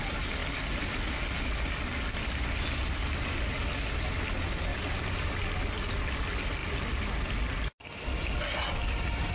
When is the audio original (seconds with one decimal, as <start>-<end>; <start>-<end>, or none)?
0.0-4.7; 5.3-9.3